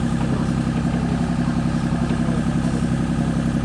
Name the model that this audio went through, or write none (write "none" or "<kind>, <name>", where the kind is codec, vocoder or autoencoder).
none